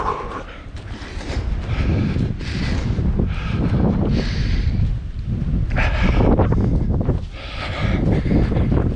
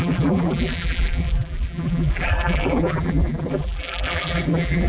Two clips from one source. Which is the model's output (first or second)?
second